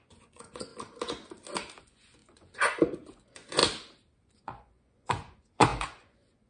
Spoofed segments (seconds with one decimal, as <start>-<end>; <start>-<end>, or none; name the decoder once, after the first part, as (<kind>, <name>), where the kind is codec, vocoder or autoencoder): 0.0-0.7 (vocoder, Vocos); 1.8-3.6; 4.2-6.5